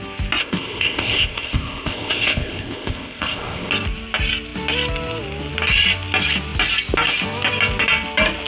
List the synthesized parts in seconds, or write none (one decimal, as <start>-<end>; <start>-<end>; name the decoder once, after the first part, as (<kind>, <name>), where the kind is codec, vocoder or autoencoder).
0.4-3.7 (codec, ZipCodec)